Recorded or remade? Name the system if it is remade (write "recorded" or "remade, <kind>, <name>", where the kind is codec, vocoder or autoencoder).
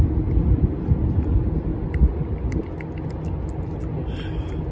recorded